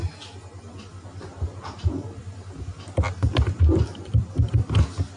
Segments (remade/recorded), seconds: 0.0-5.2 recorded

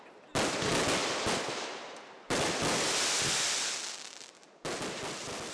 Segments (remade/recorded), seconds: 0.0-1.0 recorded; 1.0-4.3 remade; 4.3-5.5 recorded